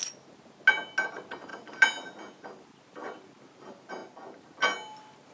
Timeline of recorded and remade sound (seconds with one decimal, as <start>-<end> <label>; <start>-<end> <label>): 0.0-5.3 recorded